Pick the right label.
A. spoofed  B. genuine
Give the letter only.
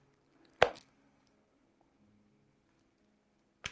B